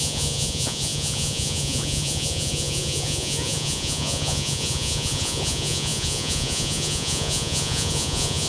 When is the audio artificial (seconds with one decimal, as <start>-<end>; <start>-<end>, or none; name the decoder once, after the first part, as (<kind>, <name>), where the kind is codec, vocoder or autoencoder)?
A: 0.0-8.5 (vocoder, Vocos)